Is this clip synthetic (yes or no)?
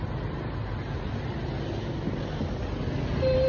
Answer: no